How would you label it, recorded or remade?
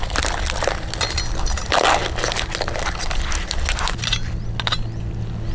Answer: recorded